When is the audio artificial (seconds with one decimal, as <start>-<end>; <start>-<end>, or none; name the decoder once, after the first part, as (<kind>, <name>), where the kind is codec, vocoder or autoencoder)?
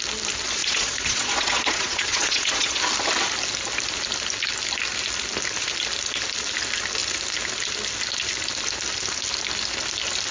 0.6-2.8 (vocoder, Vocos)